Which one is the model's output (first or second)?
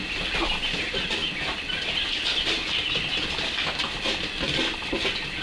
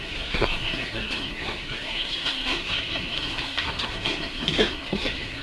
second